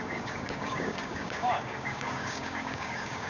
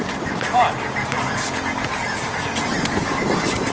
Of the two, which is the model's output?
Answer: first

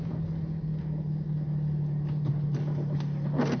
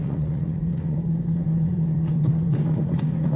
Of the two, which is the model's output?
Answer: second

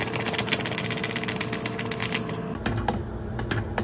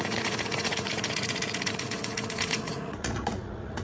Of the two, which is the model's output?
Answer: second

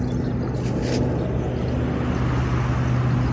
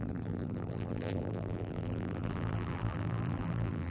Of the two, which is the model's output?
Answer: second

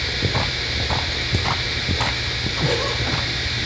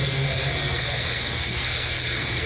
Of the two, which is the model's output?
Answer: second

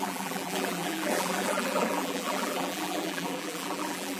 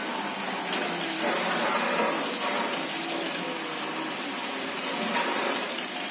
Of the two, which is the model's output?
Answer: first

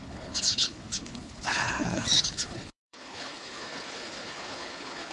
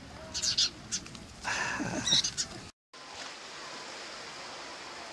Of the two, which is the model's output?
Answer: first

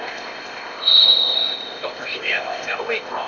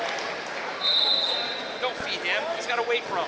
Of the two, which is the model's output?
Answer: first